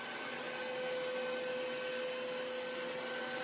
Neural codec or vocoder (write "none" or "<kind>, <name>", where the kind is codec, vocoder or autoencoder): none